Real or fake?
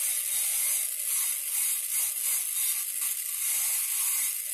real